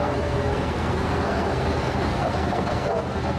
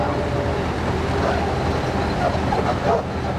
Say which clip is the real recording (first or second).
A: second